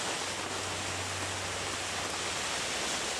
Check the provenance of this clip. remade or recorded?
recorded